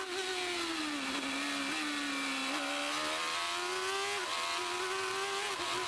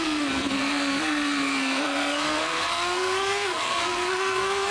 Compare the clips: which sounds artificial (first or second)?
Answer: second